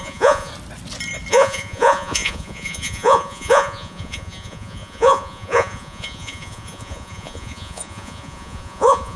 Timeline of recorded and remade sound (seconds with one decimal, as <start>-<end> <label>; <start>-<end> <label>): 0.0-0.5 remade; 0.5-1.3 recorded; 1.3-9.2 remade